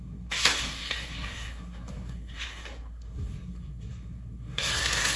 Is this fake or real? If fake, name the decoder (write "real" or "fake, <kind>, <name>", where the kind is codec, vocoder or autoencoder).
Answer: fake, codec, SNAC